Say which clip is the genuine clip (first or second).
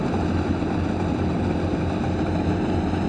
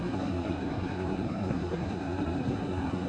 first